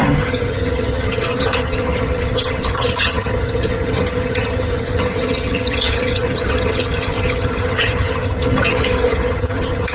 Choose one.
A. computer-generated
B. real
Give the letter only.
A